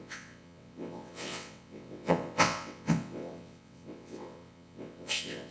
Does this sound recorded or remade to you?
remade